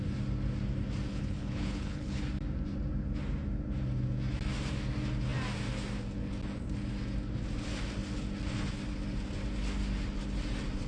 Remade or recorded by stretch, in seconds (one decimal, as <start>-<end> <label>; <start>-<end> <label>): 0.0-1.1 recorded; 1.1-2.2 remade; 2.2-10.9 recorded